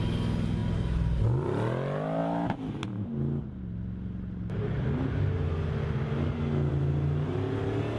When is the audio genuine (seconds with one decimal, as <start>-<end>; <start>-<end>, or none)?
0.0-8.0

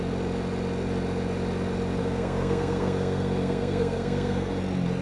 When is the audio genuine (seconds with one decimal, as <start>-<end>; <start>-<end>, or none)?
0.0-2.0; 4.5-5.0